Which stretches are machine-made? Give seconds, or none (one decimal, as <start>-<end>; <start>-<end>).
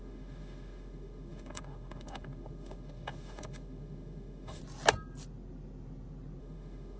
0.0-4.6; 6.4-7.0